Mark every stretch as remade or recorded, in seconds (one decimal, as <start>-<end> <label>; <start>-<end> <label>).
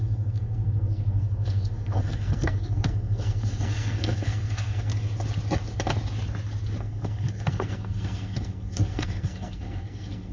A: 0.0-4.9 remade; 4.9-6.8 recorded; 6.8-10.3 remade